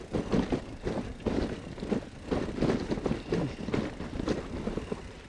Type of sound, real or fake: real